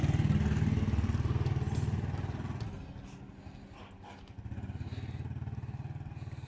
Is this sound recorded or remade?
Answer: recorded